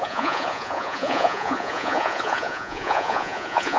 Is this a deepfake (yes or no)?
yes